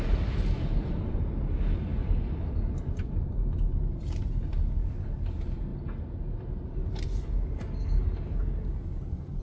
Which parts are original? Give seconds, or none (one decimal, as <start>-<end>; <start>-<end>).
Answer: 5.7-9.4